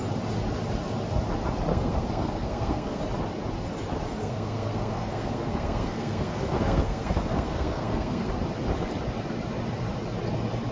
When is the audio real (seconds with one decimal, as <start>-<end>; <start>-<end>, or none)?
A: 0.0-1.7; 3.0-4.2; 8.3-10.7